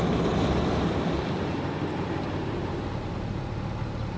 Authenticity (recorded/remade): recorded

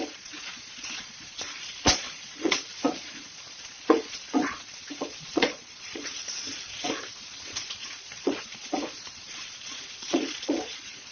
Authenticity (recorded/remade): remade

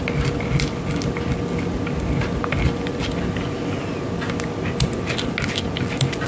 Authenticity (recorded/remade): recorded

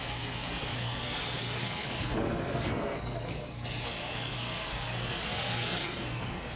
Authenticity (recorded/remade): remade